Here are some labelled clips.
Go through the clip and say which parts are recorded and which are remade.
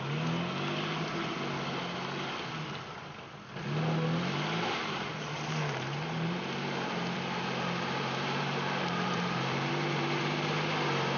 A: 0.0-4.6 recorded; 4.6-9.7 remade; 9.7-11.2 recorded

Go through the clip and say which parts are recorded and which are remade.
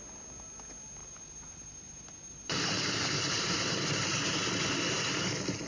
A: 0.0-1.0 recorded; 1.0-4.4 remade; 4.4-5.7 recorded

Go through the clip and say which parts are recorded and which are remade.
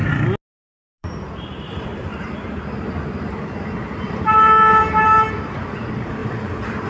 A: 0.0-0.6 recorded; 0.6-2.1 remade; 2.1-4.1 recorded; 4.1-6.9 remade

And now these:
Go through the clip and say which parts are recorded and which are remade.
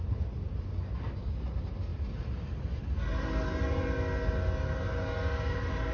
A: 0.0-5.9 recorded